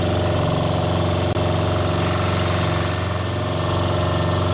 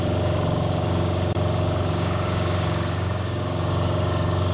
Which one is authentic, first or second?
first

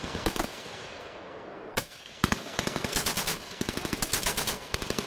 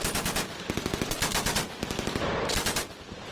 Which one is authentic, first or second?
second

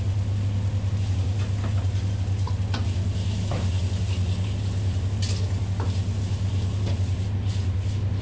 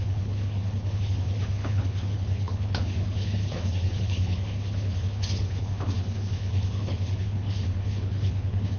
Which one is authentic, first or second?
first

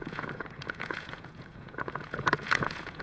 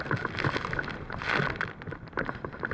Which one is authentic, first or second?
second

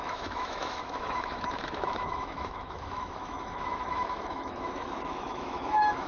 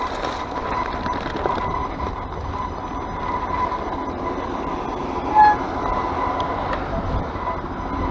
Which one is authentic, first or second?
second